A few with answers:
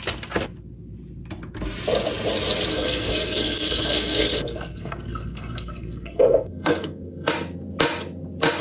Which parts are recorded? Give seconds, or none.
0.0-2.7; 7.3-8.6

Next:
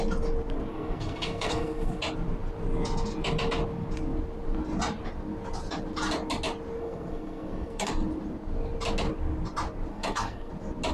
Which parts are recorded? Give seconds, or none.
0.0-0.7; 2.0-6.8; 7.9-9.9; 10.5-10.9

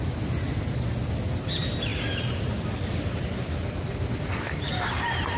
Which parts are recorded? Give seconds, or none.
0.0-5.4

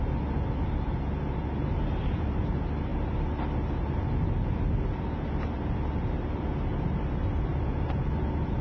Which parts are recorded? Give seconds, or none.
0.0-8.6